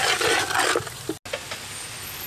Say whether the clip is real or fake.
real